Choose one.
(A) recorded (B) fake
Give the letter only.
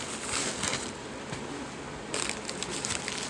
B